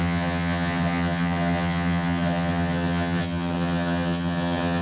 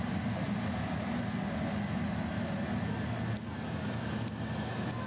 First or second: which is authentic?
second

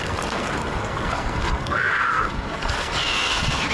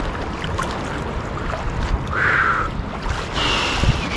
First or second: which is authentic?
second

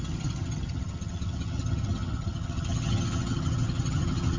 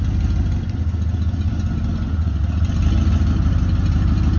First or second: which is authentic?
second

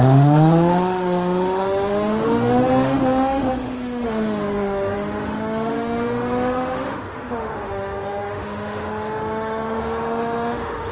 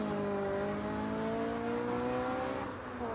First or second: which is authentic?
second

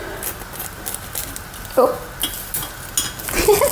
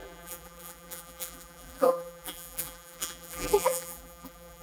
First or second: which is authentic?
first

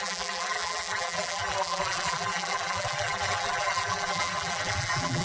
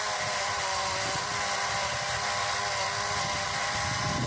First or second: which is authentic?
second